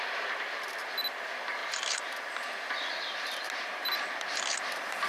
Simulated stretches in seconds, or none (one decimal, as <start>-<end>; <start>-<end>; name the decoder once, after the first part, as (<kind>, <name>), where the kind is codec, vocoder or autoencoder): none